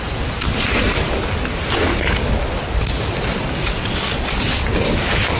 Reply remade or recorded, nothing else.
recorded